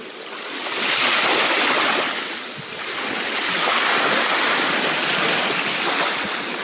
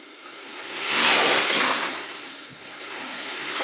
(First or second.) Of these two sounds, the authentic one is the first